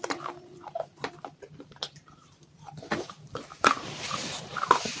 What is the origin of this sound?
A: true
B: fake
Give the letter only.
B